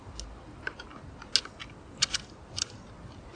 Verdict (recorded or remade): recorded